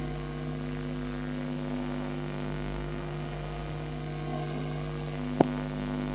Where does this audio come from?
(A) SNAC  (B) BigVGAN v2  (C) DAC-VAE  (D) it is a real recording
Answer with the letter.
A